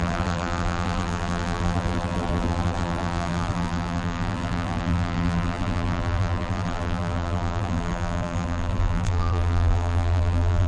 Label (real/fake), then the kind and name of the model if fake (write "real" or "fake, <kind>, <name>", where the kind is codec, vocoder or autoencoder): fake, vocoder, BigVGAN v2